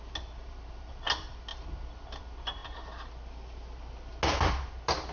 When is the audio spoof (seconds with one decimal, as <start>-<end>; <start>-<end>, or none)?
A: 0.4-0.9